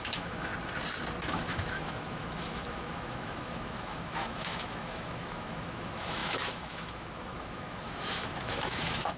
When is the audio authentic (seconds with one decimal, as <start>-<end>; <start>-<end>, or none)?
0.5-1.2